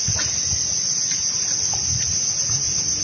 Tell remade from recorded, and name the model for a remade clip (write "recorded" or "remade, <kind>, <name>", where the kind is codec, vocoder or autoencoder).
recorded